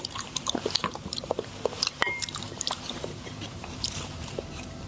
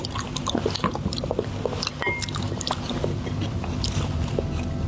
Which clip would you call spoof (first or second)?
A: first